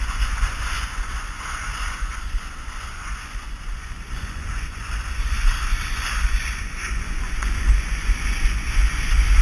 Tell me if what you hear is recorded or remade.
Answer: remade